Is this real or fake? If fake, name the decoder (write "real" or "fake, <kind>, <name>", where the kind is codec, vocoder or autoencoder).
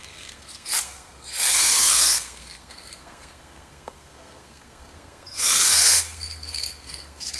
fake, codec, SNAC